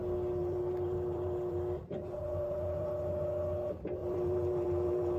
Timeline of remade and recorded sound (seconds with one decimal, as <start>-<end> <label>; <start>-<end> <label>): 0.0-0.4 recorded; 0.4-2.9 remade; 2.9-4.0 recorded; 4.0-5.2 remade